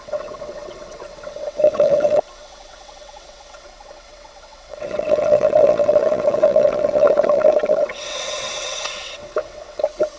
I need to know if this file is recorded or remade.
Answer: remade